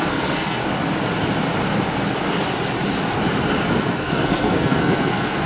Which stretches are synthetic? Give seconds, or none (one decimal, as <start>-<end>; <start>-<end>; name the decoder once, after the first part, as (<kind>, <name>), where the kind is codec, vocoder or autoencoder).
0.0-0.6 (codec, SNAC); 3.8-5.5